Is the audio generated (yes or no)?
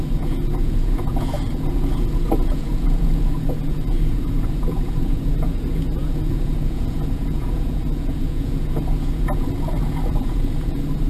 yes